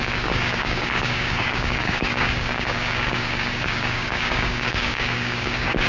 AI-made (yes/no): yes